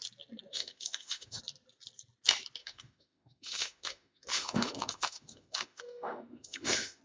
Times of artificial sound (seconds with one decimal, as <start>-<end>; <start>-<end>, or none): 0.5-1.4; 2.6-7.0